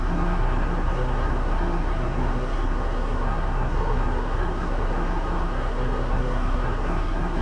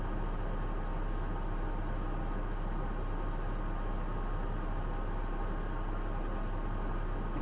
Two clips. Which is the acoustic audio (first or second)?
second